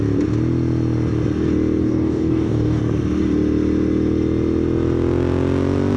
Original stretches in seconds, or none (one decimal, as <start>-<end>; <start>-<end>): 0.0-1.8; 2.8-6.0